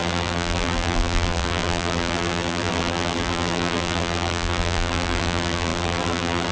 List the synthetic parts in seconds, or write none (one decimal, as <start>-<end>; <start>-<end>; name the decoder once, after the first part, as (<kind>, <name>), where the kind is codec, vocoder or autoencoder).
0.0-6.5 (vocoder, BigVGAN v2)